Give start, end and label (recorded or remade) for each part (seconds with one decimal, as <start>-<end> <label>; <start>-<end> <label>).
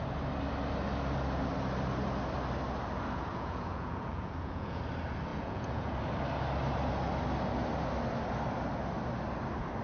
0.0-3.3 recorded; 3.3-4.8 remade; 4.8-5.3 recorded; 5.3-5.9 remade; 5.9-9.8 recorded